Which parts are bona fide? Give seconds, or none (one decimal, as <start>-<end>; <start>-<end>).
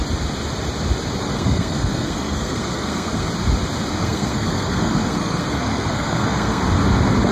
0.0-1.2; 3.3-4.0; 6.6-7.3